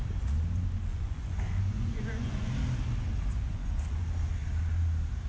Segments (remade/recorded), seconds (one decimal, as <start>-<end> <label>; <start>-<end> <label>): 0.0-0.9 recorded; 0.9-2.5 remade; 2.5-3.3 recorded; 3.3-4.0 remade; 4.0-5.3 recorded